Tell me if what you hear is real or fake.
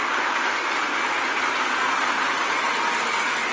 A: real